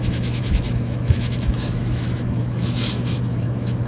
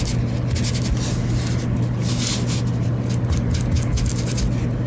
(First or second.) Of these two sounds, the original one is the second